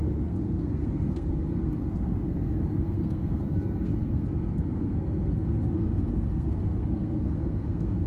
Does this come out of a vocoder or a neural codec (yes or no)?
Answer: yes